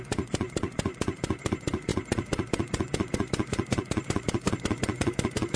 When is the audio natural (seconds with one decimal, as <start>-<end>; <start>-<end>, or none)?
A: none